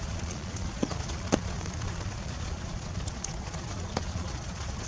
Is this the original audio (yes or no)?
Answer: no